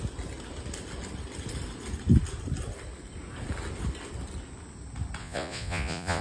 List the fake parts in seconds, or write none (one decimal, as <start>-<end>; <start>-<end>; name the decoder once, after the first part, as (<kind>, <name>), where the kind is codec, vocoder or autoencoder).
5.2-6.2 (vocoder, Vocos)